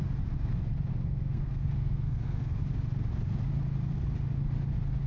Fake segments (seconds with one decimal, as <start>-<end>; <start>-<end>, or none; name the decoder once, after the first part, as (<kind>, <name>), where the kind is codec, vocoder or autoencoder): 0.9-2.6 (codec, SNAC)